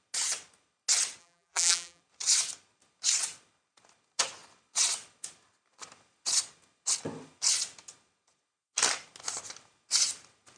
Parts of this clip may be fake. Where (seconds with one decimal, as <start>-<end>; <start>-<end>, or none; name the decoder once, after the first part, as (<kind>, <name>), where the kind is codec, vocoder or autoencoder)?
1.2-2.0 (vocoder, BigVGAN v2)